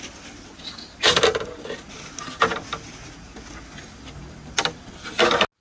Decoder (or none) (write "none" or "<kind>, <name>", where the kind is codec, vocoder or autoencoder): none